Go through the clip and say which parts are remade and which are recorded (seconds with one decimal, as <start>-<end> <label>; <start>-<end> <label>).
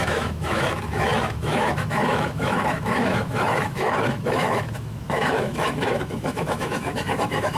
0.0-7.6 remade